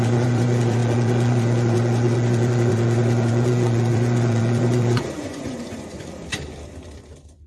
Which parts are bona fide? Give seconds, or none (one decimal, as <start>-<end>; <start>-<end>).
6.2-7.5